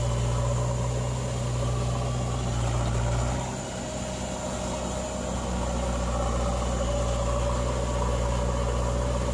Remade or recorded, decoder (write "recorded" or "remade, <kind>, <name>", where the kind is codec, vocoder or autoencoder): recorded